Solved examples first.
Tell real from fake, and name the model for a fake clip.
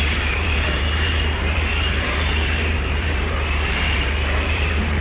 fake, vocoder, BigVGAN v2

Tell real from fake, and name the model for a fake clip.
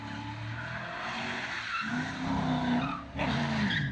real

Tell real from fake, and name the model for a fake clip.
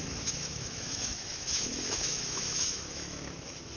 fake, autoencoder, DAC-VAE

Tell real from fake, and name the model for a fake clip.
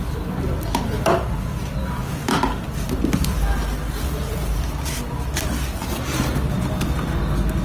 real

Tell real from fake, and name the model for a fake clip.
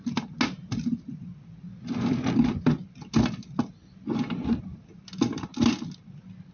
real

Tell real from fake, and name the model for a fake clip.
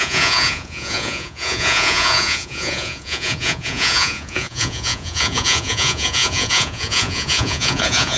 fake, vocoder, Vocos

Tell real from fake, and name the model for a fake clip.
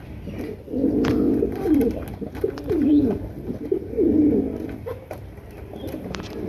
fake, vocoder, BigVGAN v2